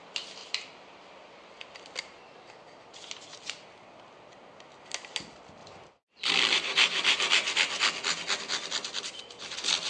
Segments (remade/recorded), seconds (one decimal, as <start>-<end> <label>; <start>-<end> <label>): 0.0-0.4 recorded; 0.4-1.8 remade; 1.8-5.6 recorded; 5.6-6.3 remade; 6.3-9.9 recorded